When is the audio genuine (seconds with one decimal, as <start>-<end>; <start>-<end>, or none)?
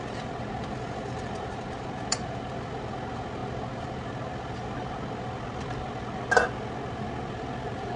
0.0-8.0